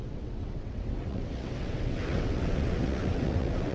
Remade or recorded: remade